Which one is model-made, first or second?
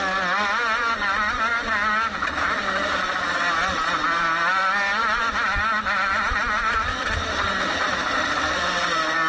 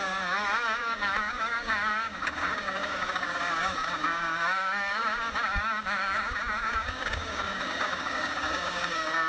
second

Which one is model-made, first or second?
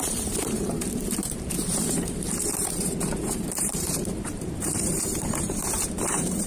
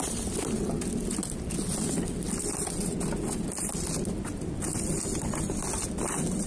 first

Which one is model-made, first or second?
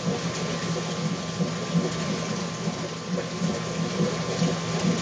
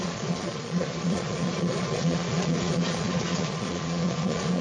second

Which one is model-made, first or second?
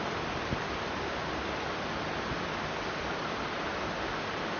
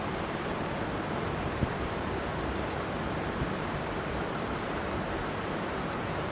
second